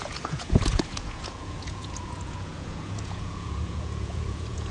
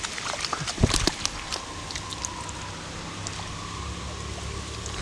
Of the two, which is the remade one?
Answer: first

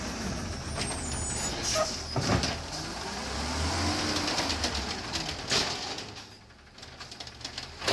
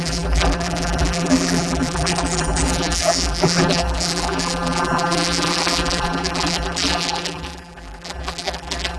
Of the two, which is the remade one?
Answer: second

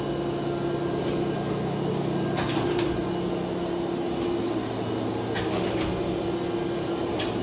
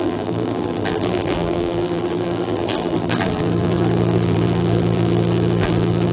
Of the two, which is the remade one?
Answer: second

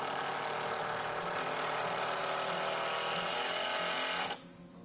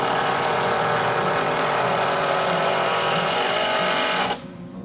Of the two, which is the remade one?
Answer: second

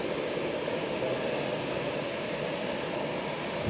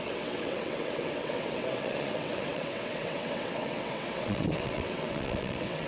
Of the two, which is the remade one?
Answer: second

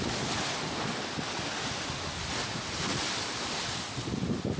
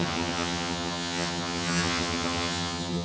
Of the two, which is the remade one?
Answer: second